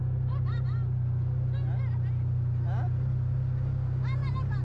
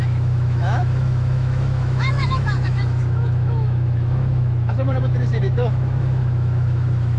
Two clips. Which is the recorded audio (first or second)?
first